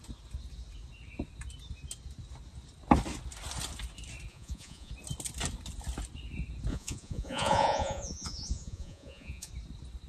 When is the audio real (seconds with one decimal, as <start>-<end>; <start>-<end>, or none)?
0.0-4.3; 4.9-6.7; 9.5-10.1